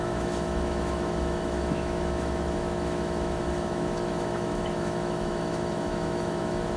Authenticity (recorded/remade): remade